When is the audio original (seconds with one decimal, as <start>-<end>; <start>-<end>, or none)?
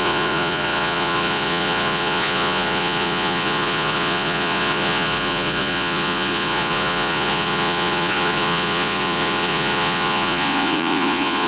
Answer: none